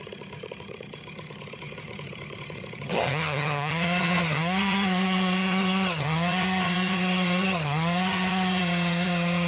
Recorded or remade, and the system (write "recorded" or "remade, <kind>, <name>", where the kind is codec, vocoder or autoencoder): remade, vocoder, HiFi-GAN